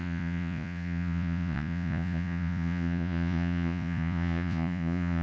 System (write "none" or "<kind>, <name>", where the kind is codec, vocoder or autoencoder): vocoder, Vocos